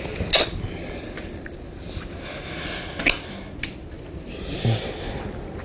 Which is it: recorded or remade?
recorded